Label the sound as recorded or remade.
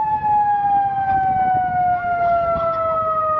recorded